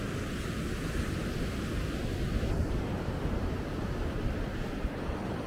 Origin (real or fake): real